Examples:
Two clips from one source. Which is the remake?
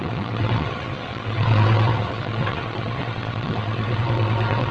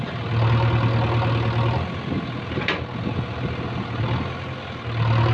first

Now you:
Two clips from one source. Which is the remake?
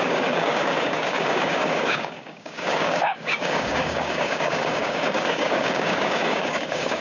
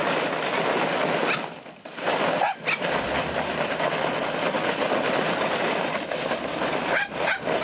first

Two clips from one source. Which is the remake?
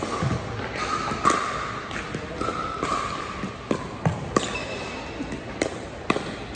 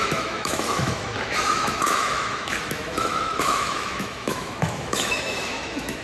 second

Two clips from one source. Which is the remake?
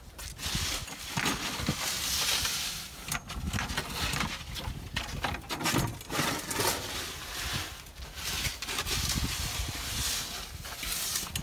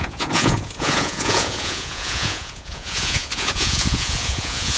second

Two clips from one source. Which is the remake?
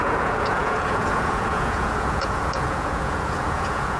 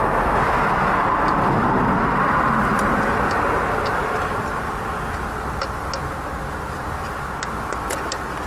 first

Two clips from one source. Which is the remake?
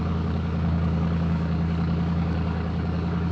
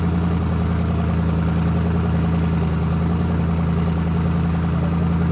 first